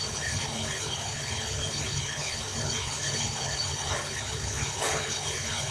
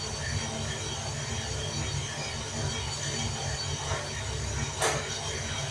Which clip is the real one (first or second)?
second